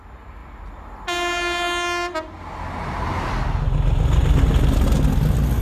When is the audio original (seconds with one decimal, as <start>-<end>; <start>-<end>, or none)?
0.0-5.6